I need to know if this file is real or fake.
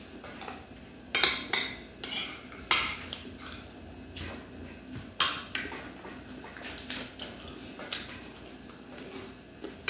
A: real